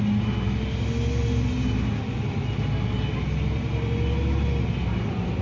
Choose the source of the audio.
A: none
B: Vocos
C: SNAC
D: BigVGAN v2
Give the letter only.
A